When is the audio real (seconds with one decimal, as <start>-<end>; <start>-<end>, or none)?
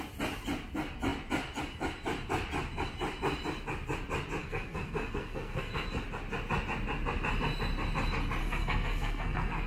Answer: 0.0-4.4; 5.9-8.4